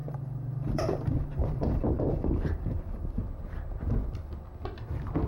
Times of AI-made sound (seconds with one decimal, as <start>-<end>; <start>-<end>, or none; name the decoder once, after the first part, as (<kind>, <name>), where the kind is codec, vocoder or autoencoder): 0.0-3.2 (vocoder, BigVGAN v2)